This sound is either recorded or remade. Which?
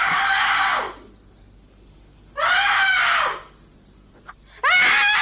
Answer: recorded